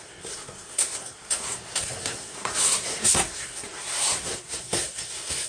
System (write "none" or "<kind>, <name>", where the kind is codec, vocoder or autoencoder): codec, SNAC